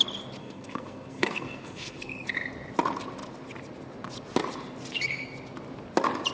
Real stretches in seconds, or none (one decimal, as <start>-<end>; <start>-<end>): 0.0-0.4; 2.3-6.3